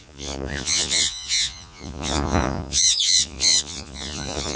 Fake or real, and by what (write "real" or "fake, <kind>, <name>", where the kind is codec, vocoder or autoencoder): fake, vocoder, Vocos